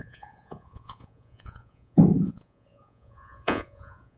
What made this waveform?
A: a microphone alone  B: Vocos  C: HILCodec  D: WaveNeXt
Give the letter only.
B